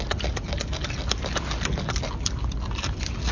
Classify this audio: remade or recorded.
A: recorded